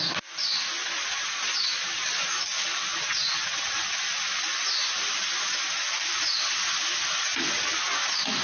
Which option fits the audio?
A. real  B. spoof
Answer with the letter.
A